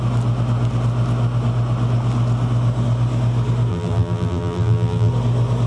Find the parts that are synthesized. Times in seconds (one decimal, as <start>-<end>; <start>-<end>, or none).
3.7-5.1

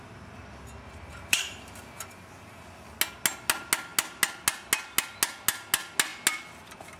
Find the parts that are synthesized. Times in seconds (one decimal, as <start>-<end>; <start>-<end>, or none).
1.1-2.6

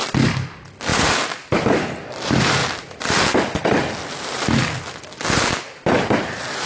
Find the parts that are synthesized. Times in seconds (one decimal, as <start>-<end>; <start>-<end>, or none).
none

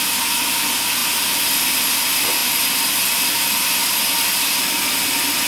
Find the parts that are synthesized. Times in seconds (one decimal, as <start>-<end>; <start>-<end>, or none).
1.0-1.5

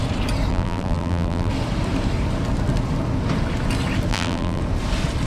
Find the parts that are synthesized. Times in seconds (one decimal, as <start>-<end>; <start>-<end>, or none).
0.5-1.5; 4.1-4.6

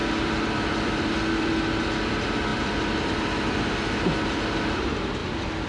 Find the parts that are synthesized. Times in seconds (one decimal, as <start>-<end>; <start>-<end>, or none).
0.0-1.5; 2.5-4.1; 5.2-5.7

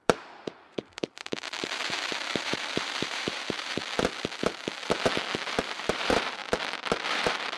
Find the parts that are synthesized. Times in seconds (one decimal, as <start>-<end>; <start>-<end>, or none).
0.0-3.8; 5.6-6.4; 7.1-7.6